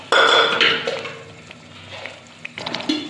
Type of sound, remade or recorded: recorded